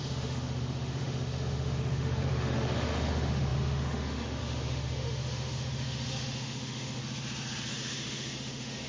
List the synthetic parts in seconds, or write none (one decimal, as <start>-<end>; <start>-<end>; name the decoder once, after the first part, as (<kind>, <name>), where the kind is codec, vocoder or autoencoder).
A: 0.0-7.0 (autoencoder, DAC-VAE); 7.7-8.9